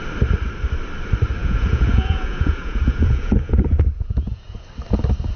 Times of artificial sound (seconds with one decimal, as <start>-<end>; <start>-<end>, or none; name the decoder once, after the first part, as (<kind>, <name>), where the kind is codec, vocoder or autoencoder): 1.4-4.6 (vocoder, Vocos)